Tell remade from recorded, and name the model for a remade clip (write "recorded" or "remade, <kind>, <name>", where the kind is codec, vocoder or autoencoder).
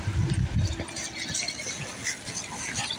recorded